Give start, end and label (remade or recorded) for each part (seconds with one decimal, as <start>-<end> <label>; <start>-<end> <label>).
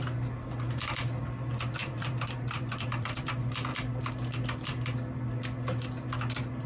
0.0-1.8 recorded; 1.8-3.3 remade; 3.3-6.7 recorded